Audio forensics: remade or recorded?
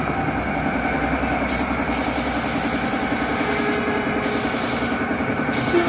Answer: recorded